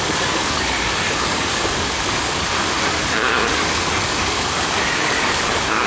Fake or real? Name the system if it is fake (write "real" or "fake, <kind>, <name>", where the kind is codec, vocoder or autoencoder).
fake, codec, DAC